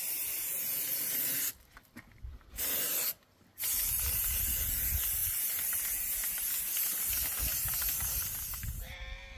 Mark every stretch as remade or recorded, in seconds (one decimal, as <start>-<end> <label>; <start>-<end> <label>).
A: 0.0-9.4 recorded